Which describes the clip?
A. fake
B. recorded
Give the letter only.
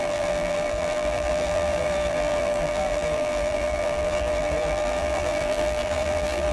A